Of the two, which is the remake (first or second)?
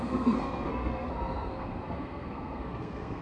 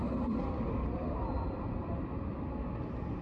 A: first